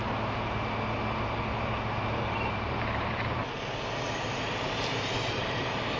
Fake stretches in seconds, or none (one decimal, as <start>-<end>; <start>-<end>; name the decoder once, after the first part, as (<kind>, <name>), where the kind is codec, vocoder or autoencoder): 2.0-3.4 (vocoder, BigVGAN v2); 4.5-6.0